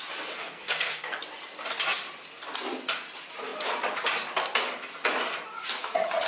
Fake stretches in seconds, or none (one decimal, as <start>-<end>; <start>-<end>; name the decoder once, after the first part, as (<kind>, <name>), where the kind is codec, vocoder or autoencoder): 0.4-1.2 (codec, SNAC)